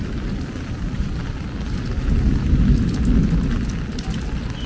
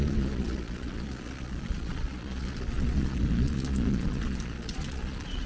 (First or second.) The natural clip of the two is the first